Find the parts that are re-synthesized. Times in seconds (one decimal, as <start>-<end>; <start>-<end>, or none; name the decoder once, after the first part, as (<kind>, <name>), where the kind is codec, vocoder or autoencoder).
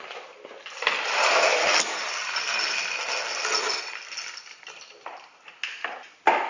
none